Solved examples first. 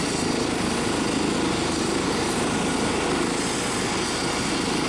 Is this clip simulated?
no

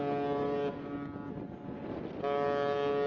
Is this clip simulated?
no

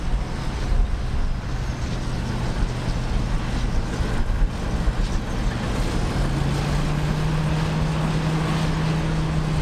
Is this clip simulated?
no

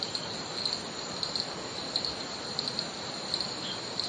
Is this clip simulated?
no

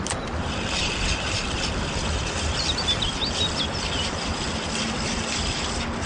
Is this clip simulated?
no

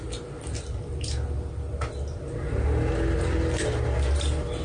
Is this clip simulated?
no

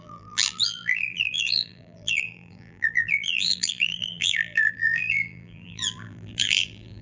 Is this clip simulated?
yes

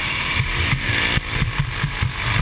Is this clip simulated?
yes